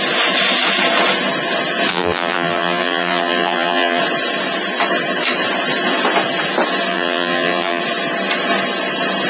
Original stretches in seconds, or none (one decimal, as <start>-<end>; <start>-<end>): 0.0-1.9; 4.0-6.9; 7.8-9.3